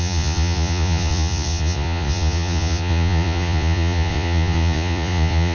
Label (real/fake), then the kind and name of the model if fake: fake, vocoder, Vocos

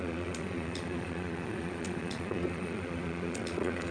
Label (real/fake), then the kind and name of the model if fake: fake, vocoder, Vocos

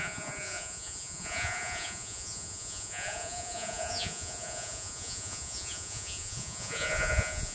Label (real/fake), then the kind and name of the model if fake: fake, vocoder, Vocos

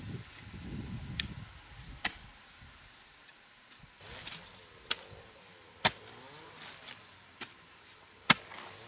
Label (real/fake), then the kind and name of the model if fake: real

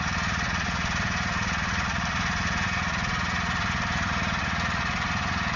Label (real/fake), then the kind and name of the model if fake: fake, vocoder, Vocos